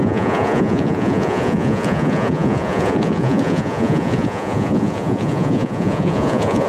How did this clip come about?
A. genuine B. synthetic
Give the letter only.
B